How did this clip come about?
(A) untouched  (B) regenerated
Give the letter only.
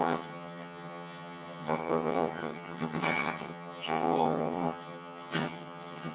B